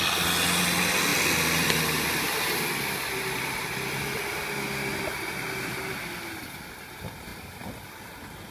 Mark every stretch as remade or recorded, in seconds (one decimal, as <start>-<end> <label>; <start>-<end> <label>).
0.0-7.3 recorded; 7.3-7.8 remade; 7.8-8.5 recorded